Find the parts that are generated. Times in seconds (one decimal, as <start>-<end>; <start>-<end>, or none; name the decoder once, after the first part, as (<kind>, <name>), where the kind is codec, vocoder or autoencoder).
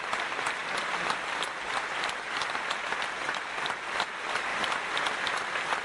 none